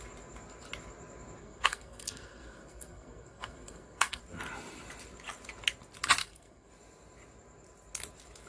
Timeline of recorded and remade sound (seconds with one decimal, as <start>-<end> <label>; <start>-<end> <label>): 0.0-1.4 recorded; 1.4-4.2 remade; 4.2-6.2 recorded; 6.2-6.7 remade; 6.7-8.5 recorded

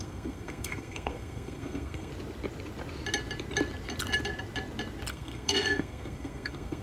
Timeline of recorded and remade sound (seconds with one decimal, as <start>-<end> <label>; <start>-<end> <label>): 0.0-2.1 remade; 2.1-5.1 recorded; 5.1-6.8 remade

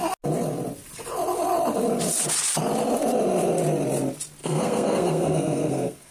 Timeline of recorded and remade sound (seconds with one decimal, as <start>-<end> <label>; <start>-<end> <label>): 0.0-4.4 recorded; 4.4-6.1 remade

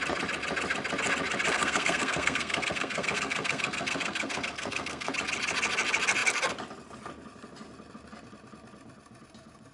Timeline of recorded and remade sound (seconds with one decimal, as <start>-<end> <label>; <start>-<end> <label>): 0.0-1.5 recorded; 1.5-5.1 remade; 5.1-9.7 recorded